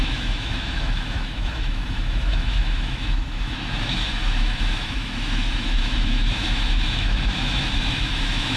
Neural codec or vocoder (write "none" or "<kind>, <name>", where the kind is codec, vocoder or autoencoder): autoencoder, DAC-VAE